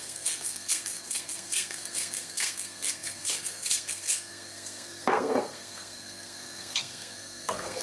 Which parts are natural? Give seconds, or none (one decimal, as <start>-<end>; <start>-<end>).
none